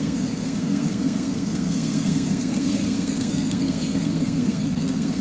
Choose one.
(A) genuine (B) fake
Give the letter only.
B